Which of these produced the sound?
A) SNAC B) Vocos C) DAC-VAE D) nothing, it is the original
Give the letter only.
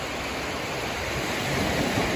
D